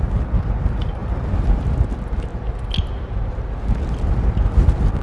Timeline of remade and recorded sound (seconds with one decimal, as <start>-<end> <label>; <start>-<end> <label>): 0.0-2.3 recorded; 2.3-3.6 remade; 3.6-5.0 recorded